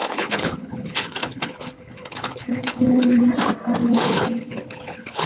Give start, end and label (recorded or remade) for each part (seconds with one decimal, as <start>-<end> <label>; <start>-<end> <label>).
0.0-3.2 remade; 3.2-3.8 recorded; 3.8-5.3 remade